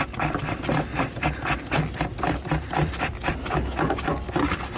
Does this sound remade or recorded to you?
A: recorded